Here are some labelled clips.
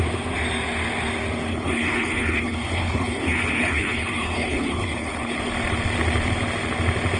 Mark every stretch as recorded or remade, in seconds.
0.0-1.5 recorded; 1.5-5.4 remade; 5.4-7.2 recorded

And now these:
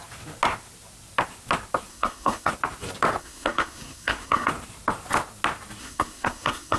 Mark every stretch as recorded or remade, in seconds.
0.0-1.9 recorded; 1.9-2.5 remade; 2.5-3.2 recorded; 3.2-4.5 remade; 4.5-5.8 recorded; 5.8-6.8 remade

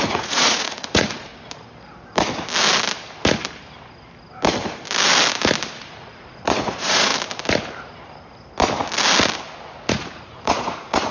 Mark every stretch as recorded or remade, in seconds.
0.0-1.3 remade; 1.3-5.9 recorded; 5.9-7.1 remade; 7.1-9.9 recorded; 9.9-11.1 remade

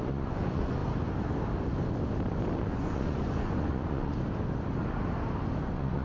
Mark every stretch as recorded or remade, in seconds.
0.0-0.8 remade; 0.8-2.6 recorded; 2.6-4.1 remade; 4.1-5.6 recorded; 5.6-6.0 remade

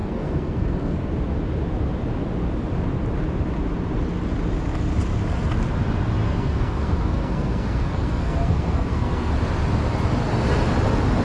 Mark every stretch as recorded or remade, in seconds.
0.0-1.1 remade; 1.1-6.2 recorded; 6.2-9.3 remade; 9.3-11.2 recorded

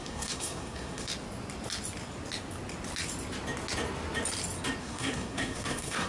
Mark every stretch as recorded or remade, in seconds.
0.0-1.1 remade; 1.1-4.8 recorded; 4.8-6.1 remade

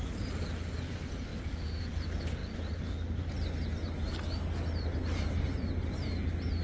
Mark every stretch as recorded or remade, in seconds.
0.0-6.6 recorded